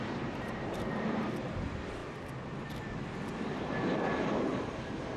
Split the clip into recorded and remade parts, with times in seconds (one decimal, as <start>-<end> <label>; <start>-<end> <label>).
0.0-2.0 remade; 2.0-5.2 recorded